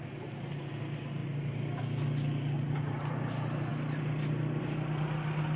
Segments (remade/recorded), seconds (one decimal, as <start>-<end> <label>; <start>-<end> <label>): 0.0-5.6 recorded